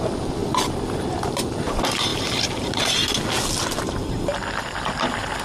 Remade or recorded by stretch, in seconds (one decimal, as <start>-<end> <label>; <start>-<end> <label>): 0.0-0.4 recorded; 0.4-1.5 remade; 1.5-2.1 recorded; 2.1-5.4 remade